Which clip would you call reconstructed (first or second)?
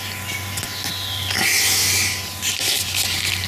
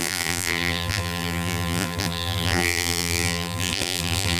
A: second